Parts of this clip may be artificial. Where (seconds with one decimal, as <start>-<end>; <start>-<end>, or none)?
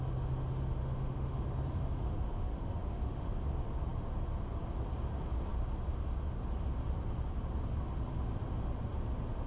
0.8-1.4; 1.8-3.3